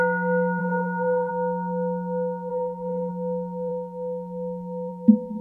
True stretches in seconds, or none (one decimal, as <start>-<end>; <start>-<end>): 0.0-0.6; 1.3-2.5; 3.1-5.4